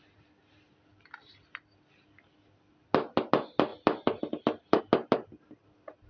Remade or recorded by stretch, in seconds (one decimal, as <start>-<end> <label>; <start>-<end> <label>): 0.0-6.1 recorded